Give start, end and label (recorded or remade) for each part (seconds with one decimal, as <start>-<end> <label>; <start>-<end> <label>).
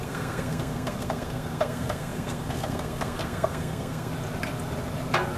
0.0-4.1 remade; 4.1-5.4 recorded